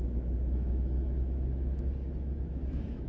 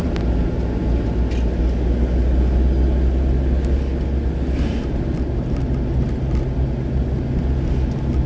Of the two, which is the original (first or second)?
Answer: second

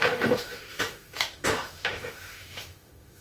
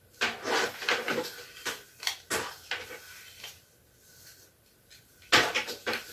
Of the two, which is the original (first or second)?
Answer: second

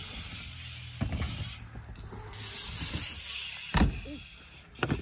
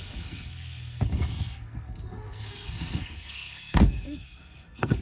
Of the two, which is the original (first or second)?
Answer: first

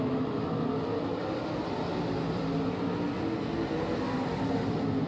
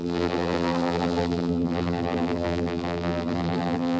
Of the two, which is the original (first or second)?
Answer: first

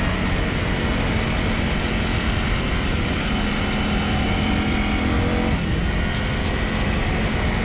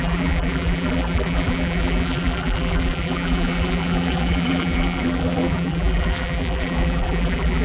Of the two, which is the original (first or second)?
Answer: first